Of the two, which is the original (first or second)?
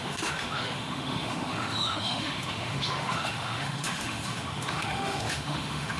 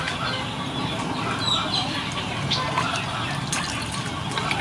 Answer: second